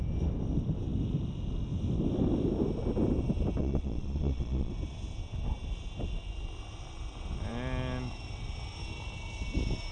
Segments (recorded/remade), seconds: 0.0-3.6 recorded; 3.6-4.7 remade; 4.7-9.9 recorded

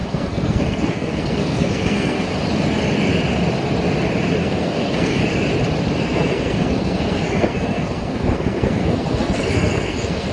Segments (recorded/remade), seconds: 0.0-2.3 remade; 2.3-4.4 recorded; 4.4-5.2 remade; 5.2-6.0 recorded; 6.0-10.3 remade

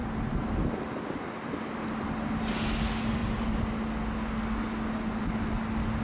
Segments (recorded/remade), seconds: 0.0-6.0 recorded

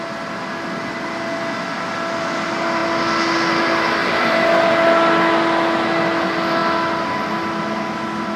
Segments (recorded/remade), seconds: 0.0-4.0 recorded; 4.0-4.7 remade; 4.7-8.4 recorded

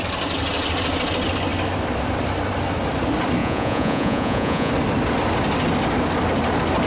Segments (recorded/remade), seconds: 0.0-3.4 recorded; 3.4-4.7 remade; 4.7-6.9 recorded

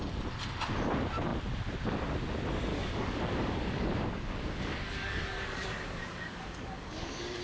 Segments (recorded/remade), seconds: 0.0-2.7 recorded; 2.7-7.4 remade

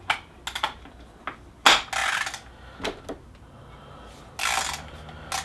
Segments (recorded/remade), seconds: 0.0-5.4 recorded

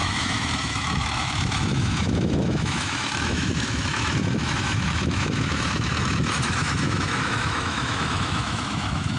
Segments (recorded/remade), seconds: 0.0-9.2 remade